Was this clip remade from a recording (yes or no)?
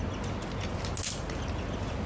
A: no